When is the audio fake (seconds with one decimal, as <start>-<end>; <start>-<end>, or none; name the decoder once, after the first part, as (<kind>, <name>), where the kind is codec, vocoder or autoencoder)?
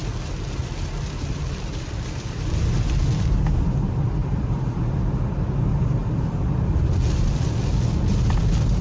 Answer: 0.0-2.5 (vocoder, BigVGAN v2); 4.2-4.7; 6.0-7.6